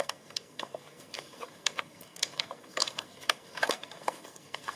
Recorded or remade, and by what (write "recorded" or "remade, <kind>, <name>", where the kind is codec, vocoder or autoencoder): remade, codec, SNAC